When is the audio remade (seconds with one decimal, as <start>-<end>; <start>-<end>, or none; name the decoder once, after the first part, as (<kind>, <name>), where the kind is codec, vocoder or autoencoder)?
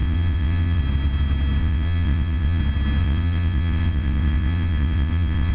0.0-0.8 (vocoder, WaveNeXt); 1.6-2.6; 3.0-5.5